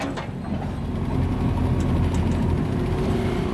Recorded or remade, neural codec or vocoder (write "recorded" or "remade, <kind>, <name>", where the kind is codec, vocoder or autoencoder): recorded